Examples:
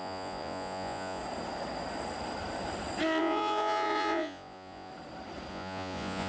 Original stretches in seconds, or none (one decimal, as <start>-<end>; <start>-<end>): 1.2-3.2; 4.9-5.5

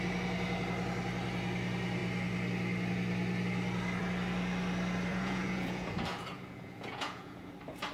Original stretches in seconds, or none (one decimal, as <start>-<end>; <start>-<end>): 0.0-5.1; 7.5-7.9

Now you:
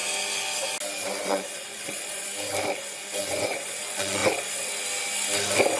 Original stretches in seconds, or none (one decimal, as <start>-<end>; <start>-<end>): 0.0-1.2; 2.3-3.2; 4.2-5.8